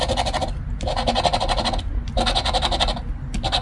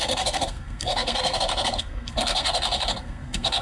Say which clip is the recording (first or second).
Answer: first